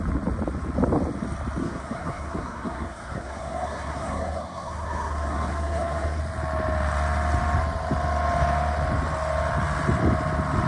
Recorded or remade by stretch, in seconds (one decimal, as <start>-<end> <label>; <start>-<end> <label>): 0.0-1.6 recorded; 1.6-6.2 remade; 6.2-10.7 recorded